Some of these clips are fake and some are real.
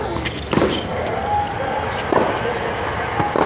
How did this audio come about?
real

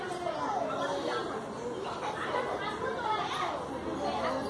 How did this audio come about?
real